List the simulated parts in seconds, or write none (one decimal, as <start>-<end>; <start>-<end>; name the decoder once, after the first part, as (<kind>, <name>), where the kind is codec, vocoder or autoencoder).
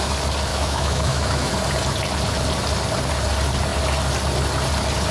0.5-1.5 (autoencoder, DAC-VAE)